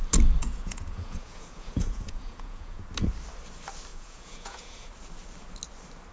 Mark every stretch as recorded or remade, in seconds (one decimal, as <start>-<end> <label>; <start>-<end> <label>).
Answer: 0.0-0.4 recorded; 0.4-2.9 remade; 2.9-3.9 recorded; 3.9-4.9 remade; 4.9-6.1 recorded